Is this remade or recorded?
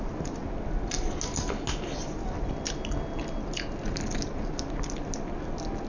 recorded